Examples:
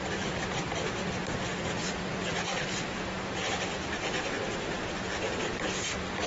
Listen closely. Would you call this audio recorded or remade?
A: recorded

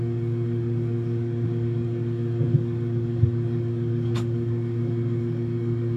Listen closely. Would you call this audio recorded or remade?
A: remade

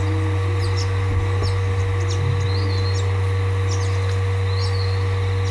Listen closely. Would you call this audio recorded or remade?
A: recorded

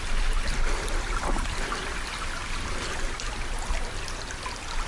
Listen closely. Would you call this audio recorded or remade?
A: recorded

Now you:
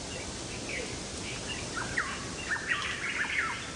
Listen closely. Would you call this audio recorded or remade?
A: recorded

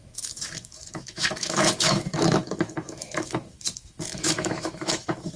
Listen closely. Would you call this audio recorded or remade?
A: remade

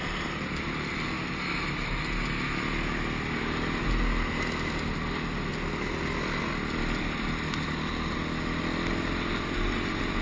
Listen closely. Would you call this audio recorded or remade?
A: recorded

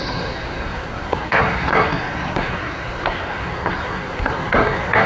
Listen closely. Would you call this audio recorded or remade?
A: remade